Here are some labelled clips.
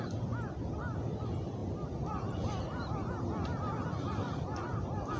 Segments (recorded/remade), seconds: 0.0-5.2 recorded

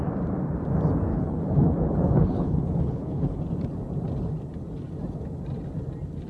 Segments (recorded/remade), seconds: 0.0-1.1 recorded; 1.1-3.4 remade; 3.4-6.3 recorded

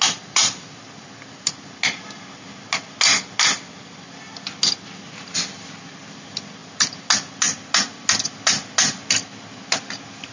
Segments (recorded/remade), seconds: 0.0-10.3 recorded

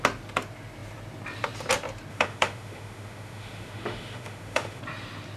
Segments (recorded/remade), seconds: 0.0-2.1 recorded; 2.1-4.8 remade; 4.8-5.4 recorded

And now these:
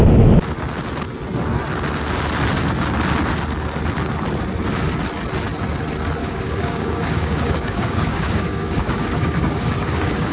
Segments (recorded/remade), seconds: 0.0-6.2 recorded; 6.2-10.3 remade